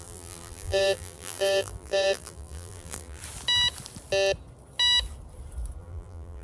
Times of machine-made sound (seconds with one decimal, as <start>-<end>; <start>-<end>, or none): 0.0-3.2; 5.8-6.4